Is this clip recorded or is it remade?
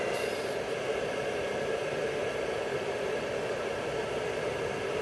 remade